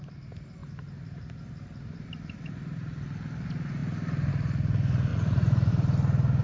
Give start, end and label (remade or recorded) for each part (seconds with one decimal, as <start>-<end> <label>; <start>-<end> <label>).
0.0-5.1 recorded; 5.1-5.7 remade; 5.7-6.4 recorded